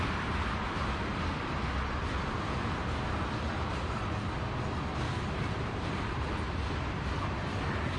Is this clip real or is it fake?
real